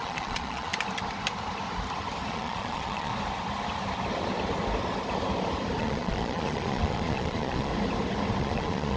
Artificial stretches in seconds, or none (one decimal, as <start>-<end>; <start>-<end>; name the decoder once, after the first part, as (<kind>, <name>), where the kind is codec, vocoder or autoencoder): 0.0-0.7 (vocoder, Vocos); 2.3-3.1; 5.8-7.7; 8.4-9.0